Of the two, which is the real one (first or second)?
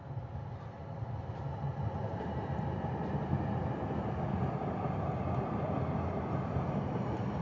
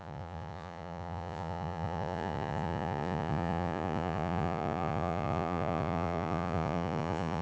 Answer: first